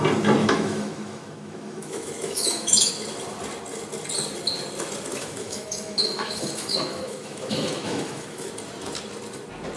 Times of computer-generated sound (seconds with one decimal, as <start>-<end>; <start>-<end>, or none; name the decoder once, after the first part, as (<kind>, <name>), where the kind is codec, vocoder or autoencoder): 0.4-2.9 (autoencoder, DAC-VAE); 5.1-8.5